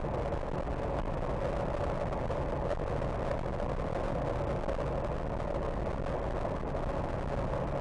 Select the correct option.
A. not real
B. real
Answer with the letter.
B